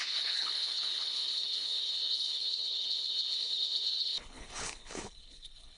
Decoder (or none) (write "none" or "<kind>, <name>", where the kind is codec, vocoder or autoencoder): codec, HILCodec